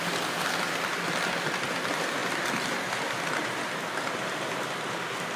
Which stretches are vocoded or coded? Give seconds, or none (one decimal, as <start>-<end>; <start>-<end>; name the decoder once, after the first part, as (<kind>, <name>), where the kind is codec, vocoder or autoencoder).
none